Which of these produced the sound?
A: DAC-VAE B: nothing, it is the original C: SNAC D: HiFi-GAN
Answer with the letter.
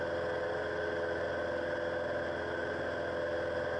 B